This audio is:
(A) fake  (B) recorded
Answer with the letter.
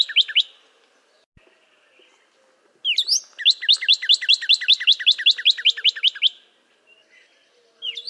B